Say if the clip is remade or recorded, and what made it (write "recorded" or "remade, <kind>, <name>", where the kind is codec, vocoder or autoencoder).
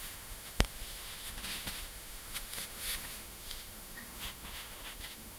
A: remade, autoencoder, DAC-VAE